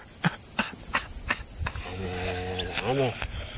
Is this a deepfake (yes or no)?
no